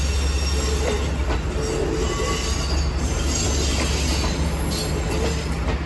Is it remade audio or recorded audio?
recorded